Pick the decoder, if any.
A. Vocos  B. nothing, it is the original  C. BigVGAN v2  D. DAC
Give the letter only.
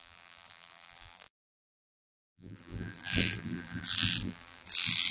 C